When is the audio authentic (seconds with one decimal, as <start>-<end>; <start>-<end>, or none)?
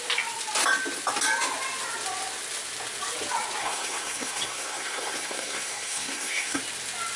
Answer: 0.0-3.6; 6.6-7.2